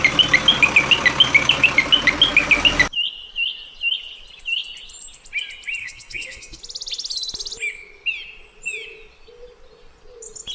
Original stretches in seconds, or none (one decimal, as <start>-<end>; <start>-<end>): 0.0-5.8; 6.6-10.5